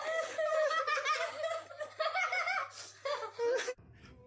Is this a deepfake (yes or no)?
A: no